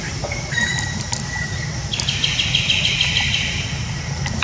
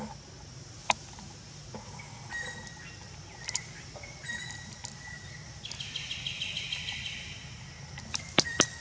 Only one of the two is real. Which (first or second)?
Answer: second